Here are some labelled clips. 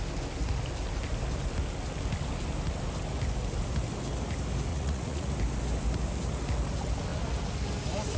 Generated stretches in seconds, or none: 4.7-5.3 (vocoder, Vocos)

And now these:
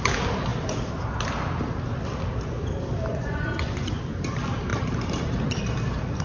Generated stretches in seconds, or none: 3.1-4.0 (vocoder, Vocos)

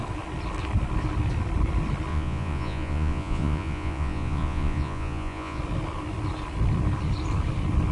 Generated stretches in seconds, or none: 2.1-5.6 (vocoder, Vocos)

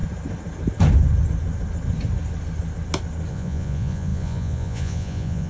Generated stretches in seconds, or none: 3.3-5.5 (vocoder, Vocos)

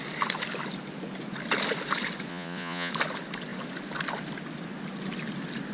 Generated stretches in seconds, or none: 2.3-2.9 (vocoder, Vocos)

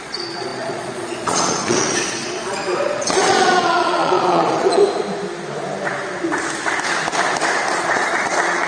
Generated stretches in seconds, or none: 0.0-4.8 (vocoder, Vocos); 7.7-8.7

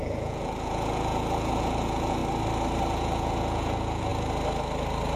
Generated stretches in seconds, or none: 0.0-2.2 (vocoder, Vocos); 2.9-4.1